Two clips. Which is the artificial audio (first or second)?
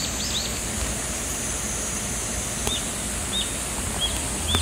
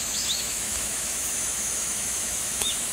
second